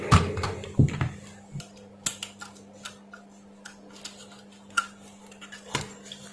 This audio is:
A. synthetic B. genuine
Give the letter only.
B